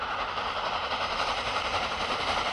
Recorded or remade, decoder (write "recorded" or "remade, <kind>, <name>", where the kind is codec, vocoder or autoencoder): remade, vocoder, BigVGAN v2